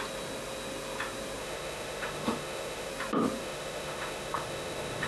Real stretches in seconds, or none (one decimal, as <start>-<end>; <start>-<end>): 0.0-1.4; 2.9-3.4